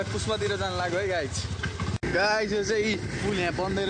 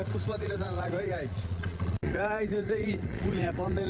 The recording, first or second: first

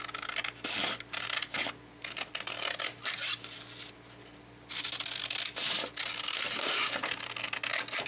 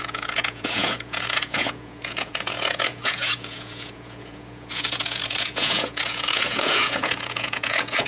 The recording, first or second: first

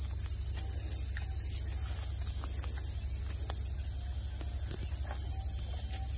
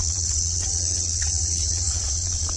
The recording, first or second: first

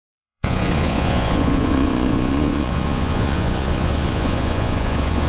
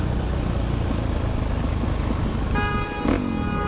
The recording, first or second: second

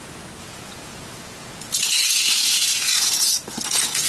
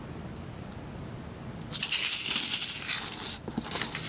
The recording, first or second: second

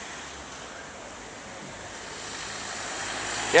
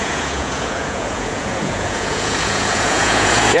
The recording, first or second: first